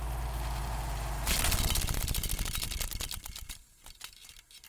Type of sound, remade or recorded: recorded